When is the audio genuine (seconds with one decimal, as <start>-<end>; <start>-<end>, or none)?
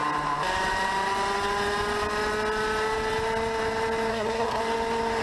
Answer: 0.0-4.1; 4.6-5.2